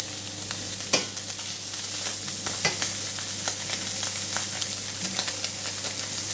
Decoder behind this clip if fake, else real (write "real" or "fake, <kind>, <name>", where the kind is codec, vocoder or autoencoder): real